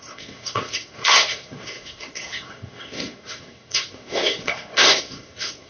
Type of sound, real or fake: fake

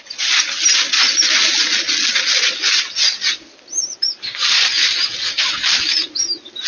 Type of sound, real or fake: real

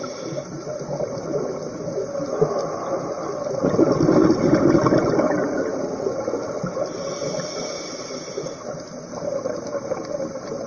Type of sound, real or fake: real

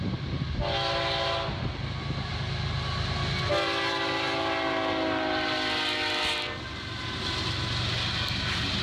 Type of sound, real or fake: real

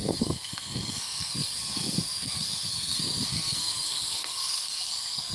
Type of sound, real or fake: fake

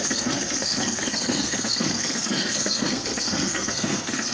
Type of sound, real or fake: fake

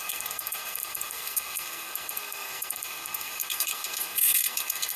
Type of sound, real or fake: fake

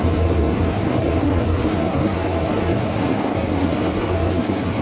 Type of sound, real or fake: fake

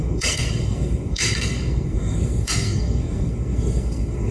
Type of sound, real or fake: fake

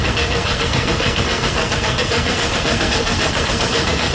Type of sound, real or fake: fake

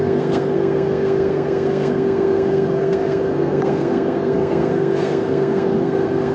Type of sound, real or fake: fake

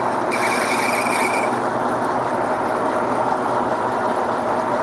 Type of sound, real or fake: real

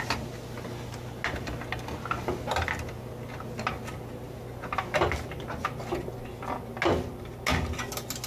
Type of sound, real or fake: real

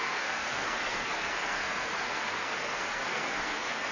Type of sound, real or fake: fake